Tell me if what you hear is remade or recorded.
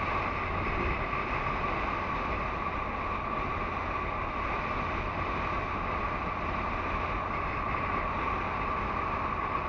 recorded